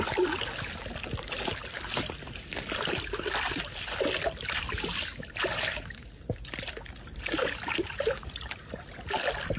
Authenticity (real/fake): real